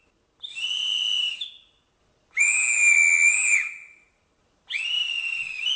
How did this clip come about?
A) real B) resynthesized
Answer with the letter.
A